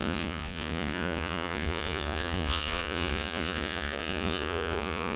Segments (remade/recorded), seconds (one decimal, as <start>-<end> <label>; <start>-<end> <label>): 0.0-5.2 remade